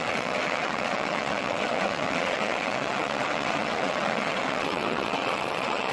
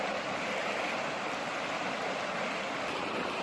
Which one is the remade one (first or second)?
first